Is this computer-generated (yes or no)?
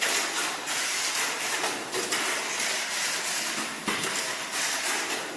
no